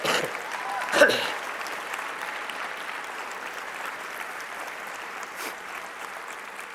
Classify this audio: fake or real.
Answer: fake